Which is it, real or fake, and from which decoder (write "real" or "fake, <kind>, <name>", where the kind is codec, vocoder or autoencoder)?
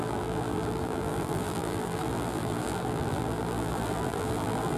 fake, vocoder, BigVGAN v2